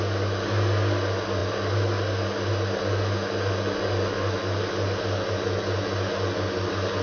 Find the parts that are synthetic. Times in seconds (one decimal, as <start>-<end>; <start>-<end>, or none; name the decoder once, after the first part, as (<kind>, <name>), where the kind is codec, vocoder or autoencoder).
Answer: none